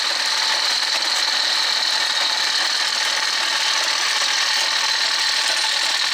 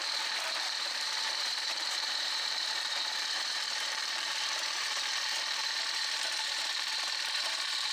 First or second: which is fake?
second